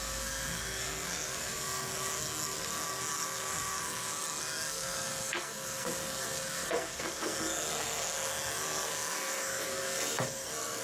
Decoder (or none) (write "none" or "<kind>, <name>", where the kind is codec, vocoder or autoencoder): codec, SNAC